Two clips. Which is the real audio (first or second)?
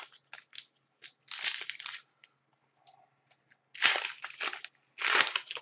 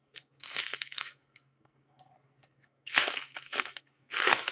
first